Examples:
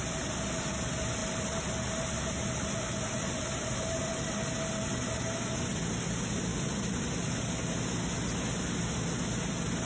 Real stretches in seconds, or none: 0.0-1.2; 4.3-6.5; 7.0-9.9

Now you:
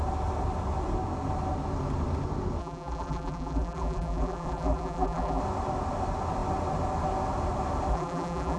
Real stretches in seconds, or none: 0.0-2.6; 5.4-7.9

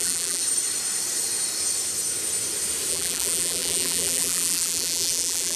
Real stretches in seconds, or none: 0.4-2.9

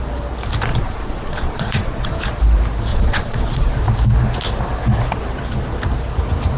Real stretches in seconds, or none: 0.0-0.7; 2.1-2.9; 3.7-6.6